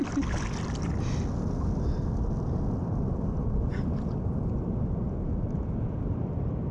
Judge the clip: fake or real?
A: real